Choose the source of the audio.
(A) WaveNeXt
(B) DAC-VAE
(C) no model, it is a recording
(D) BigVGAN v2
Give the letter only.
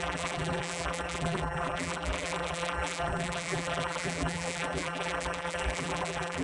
D